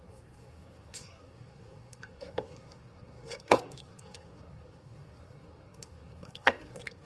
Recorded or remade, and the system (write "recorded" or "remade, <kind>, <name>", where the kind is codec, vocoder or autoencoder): remade, codec, SNAC